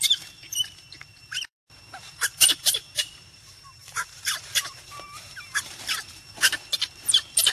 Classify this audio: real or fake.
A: fake